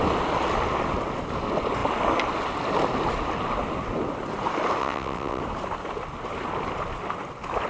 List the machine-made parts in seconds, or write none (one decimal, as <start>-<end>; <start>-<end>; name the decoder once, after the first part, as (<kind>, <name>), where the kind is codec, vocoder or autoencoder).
4.8-5.4 (vocoder, WaveNeXt)